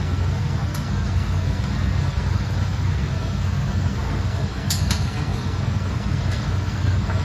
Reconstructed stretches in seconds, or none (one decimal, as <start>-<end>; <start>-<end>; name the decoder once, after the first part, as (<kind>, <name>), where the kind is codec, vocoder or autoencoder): 0.0-7.2 (codec, SNAC)